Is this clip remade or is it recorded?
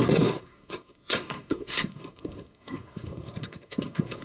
remade